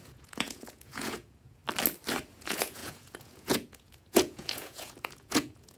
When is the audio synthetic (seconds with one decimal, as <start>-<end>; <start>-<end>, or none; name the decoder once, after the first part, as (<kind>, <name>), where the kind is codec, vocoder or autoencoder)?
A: 0.0-1.6 (vocoder, Vocos); 2.3-5.8